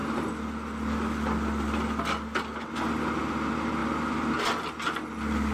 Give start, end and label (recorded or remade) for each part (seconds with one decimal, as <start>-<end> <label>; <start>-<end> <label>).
0.0-5.5 recorded